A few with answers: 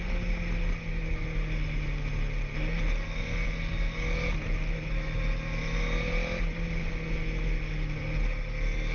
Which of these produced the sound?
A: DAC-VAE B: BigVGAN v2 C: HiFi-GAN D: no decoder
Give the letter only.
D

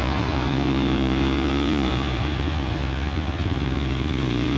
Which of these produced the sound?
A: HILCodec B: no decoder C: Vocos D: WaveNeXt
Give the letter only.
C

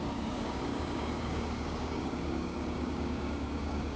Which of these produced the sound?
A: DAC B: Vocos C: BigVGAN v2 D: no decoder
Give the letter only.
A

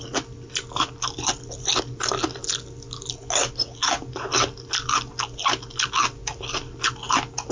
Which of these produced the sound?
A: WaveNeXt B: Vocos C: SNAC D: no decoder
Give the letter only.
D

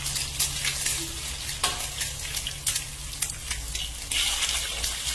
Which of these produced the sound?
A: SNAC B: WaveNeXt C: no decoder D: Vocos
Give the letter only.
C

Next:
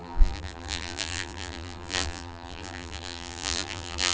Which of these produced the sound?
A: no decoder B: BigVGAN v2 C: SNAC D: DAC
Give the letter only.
B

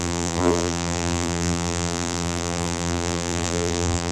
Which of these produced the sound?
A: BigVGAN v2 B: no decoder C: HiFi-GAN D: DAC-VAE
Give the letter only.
A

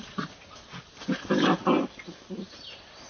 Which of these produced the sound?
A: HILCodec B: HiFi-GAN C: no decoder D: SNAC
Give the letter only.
C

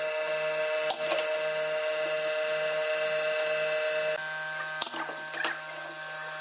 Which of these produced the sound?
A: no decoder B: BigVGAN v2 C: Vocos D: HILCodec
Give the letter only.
A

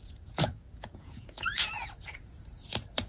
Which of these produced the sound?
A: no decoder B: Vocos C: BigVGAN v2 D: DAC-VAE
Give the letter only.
B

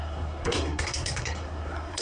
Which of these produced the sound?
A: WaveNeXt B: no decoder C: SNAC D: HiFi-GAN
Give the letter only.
C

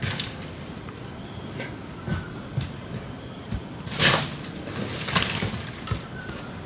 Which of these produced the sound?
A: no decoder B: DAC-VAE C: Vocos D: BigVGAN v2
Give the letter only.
A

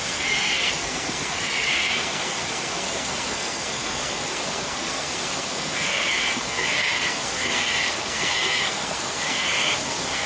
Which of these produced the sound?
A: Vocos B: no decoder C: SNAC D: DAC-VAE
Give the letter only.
C